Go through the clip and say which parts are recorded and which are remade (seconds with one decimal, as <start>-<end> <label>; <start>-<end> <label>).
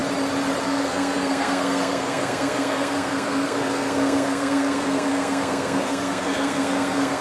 0.0-0.6 recorded; 0.6-7.2 remade